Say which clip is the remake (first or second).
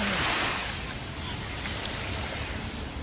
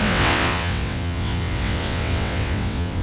second